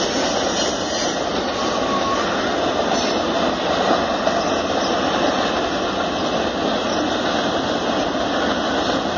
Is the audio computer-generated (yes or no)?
no